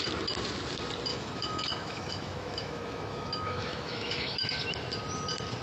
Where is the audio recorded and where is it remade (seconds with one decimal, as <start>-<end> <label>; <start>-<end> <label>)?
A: 0.0-1.1 recorded; 1.1-4.5 remade; 4.5-5.6 recorded